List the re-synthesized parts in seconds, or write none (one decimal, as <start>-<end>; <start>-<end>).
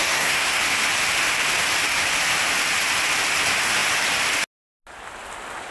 0.0-0.6